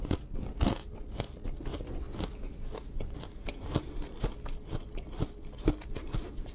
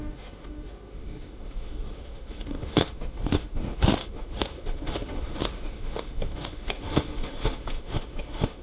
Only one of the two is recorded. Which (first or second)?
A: first